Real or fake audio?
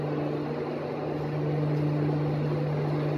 real